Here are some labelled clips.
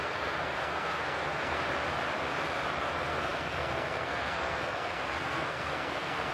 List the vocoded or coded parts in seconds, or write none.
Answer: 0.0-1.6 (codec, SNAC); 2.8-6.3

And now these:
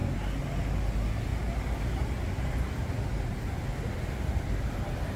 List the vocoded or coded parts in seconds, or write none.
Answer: none

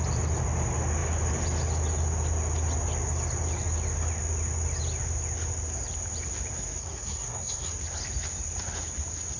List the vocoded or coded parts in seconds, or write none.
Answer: 6.8-7.7 (codec, SNAC)

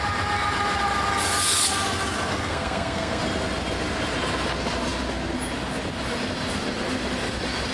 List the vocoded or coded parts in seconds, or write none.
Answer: 2.3-3.2 (codec, SNAC)

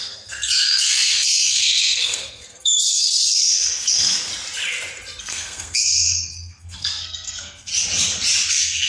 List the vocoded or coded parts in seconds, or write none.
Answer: 0.0-4.3 (codec, SNAC); 5.2-7.7; 8.5-8.9

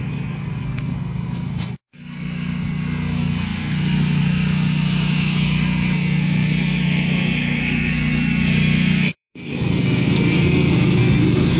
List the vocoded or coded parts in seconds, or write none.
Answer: 0.0-11.6 (codec, SNAC)

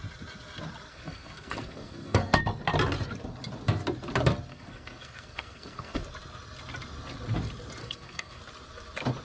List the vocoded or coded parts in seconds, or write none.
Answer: 0.9-2.4 (codec, SNAC); 4.5-6.0; 7.8-8.4